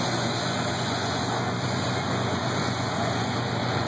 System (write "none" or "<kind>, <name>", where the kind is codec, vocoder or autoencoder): vocoder, Vocos